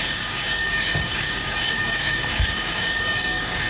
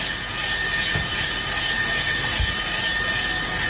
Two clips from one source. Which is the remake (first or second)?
first